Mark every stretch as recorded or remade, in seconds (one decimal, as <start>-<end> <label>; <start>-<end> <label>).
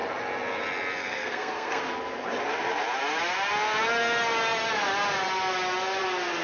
0.0-1.0 recorded; 1.0-1.8 remade; 1.8-6.4 recorded